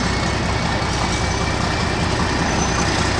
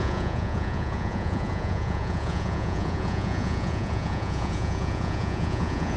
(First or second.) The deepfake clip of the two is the second